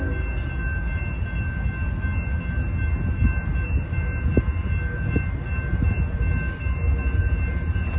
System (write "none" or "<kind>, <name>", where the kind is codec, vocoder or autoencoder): none